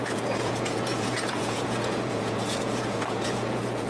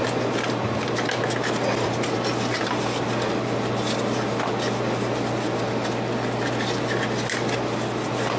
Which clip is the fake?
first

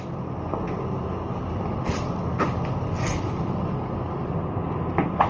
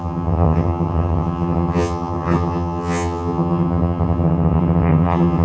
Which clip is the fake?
second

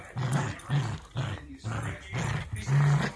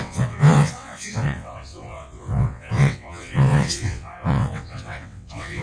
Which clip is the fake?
second